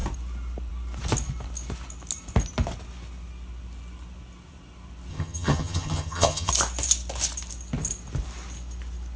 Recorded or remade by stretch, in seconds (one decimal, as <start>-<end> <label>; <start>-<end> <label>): 0.0-5.1 recorded; 5.1-6.5 remade; 6.5-9.2 recorded